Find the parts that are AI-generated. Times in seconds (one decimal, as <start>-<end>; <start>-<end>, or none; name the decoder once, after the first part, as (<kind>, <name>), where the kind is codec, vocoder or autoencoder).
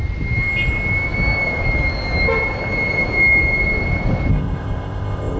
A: 4.3-5.4 (codec, ZipCodec)